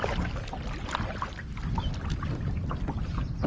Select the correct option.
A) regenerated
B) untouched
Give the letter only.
B